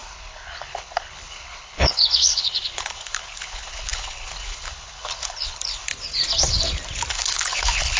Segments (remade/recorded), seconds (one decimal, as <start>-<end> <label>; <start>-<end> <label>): 0.0-5.9 remade; 5.9-7.1 recorded; 7.1-8.0 remade